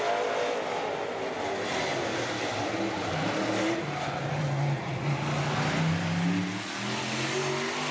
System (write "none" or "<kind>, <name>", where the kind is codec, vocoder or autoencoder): none